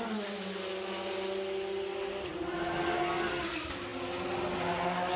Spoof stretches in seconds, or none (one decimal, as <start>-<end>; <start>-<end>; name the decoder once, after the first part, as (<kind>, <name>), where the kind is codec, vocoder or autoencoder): none